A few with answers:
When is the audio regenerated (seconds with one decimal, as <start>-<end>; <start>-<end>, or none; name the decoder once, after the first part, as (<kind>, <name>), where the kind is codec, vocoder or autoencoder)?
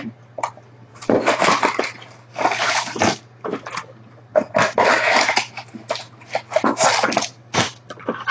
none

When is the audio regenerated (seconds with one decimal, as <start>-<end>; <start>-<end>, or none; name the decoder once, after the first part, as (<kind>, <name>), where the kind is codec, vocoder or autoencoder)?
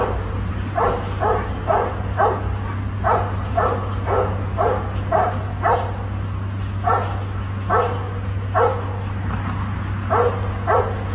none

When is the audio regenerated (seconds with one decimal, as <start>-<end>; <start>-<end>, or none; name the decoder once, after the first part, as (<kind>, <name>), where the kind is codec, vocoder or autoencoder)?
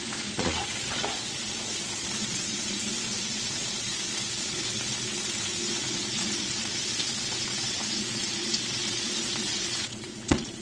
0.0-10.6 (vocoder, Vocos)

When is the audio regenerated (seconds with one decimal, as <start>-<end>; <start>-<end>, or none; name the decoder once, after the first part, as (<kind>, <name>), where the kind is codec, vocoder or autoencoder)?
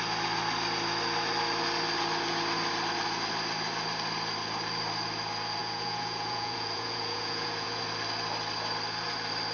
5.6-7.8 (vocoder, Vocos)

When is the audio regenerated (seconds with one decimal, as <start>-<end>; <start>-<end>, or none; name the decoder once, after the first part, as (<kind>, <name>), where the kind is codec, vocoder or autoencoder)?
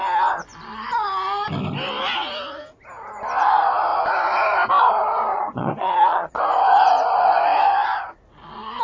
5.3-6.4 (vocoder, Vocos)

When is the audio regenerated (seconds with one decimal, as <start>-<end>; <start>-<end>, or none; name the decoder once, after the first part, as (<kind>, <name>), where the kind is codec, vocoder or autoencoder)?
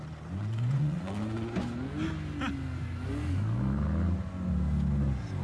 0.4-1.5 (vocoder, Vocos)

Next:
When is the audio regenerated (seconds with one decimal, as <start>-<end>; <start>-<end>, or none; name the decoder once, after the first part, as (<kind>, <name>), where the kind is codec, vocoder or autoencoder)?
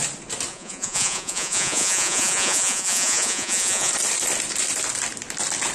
0.5-3.9 (vocoder, Vocos)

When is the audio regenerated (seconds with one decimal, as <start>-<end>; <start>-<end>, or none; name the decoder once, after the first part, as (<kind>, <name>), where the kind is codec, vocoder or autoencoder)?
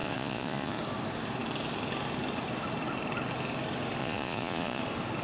0.0-0.8 (vocoder, Vocos); 4.0-4.8